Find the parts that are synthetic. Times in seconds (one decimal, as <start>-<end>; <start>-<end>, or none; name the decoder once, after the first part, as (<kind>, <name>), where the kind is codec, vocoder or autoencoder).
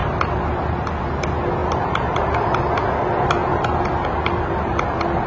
1.6-2.3 (vocoder, BigVGAN v2); 3.4-4.8